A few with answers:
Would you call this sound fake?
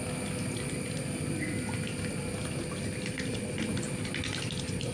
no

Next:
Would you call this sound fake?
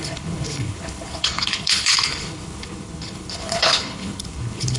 yes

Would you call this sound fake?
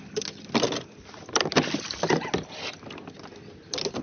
no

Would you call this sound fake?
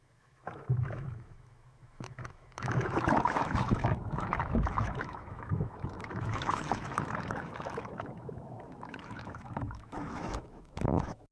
yes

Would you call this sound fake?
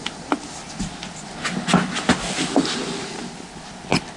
no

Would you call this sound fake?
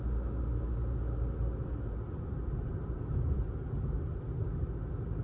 no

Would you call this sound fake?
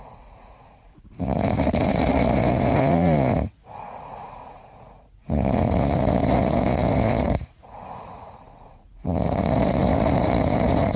yes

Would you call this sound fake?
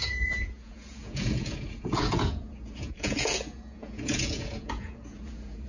yes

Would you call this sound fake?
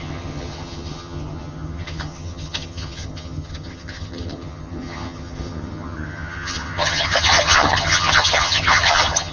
yes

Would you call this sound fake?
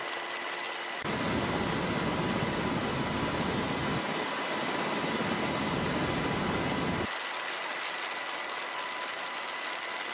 no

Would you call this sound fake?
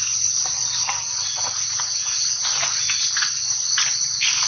no